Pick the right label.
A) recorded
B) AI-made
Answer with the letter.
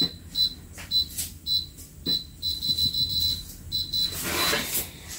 A